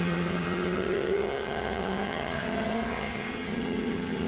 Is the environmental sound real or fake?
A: fake